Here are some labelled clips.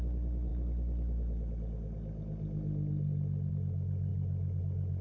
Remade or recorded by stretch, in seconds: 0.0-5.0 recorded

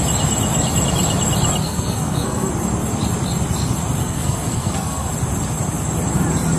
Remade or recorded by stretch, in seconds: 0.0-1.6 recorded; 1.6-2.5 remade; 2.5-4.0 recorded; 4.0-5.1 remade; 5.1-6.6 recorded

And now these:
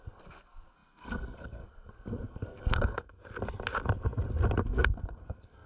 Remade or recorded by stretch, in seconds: 0.0-3.2 remade; 3.2-4.6 recorded; 4.6-5.7 remade

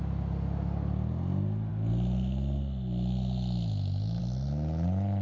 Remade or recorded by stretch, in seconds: 0.0-5.2 recorded

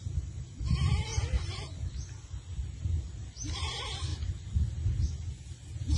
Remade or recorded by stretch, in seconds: 0.0-6.0 recorded

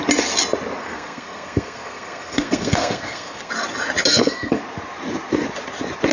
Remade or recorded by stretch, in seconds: 0.0-0.8 recorded; 0.8-3.5 remade; 3.5-4.1 recorded; 4.1-4.6 remade; 4.6-6.1 recorded

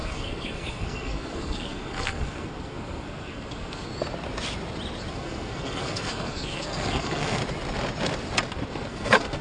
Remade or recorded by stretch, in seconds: 0.0-3.9 remade; 3.9-5.1 recorded; 5.1-7.4 remade; 7.4-8.7 recorded; 8.7-9.4 remade

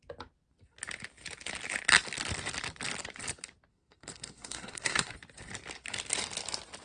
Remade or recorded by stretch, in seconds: 0.0-3.7 recorded; 3.7-5.1 remade; 5.1-6.8 recorded